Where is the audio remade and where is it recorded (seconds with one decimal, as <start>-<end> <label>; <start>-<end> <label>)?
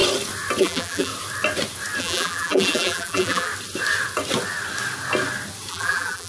0.0-0.6 recorded; 0.6-1.1 remade; 1.1-2.0 recorded; 2.0-3.5 remade; 3.5-5.7 recorded; 5.7-6.3 remade